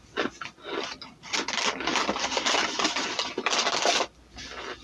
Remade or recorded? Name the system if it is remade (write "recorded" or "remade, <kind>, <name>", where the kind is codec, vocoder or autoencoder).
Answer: recorded